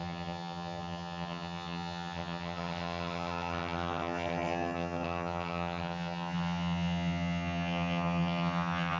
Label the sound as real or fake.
fake